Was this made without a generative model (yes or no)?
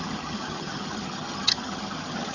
no